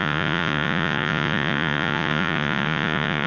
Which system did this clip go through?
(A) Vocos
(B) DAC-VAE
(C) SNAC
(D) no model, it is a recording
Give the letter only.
A